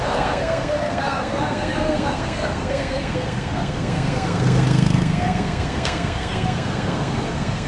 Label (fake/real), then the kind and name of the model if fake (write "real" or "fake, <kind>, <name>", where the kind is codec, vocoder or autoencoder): fake, codec, SNAC